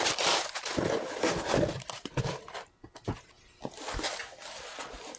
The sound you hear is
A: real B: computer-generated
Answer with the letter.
A